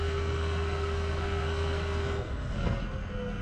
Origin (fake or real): fake